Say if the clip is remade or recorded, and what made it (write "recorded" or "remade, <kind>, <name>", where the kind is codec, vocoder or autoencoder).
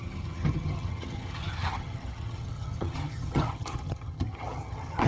remade, vocoder, HiFi-GAN